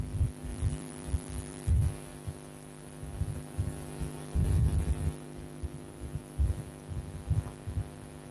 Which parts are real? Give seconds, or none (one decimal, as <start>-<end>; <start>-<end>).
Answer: 0.0-0.5; 1.7-8.3